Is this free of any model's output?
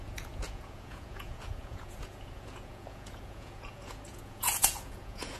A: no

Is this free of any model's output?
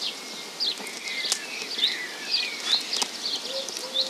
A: yes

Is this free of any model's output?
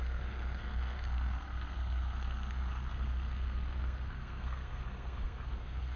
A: no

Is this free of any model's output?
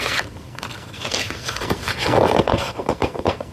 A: no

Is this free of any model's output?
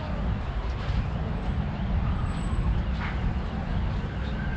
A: yes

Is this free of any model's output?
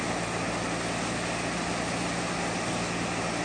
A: yes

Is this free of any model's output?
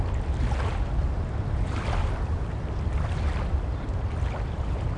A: yes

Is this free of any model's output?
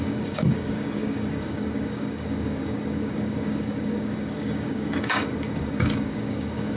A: no